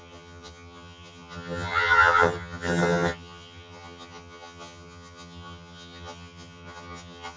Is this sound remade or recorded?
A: remade